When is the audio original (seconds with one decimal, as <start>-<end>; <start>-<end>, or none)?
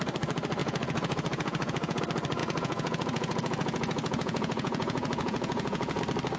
0.0-0.6; 2.0-2.4; 6.0-6.4